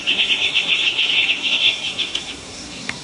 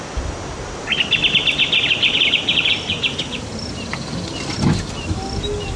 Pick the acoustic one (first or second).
second